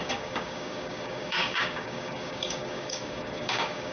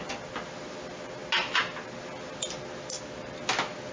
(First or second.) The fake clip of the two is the first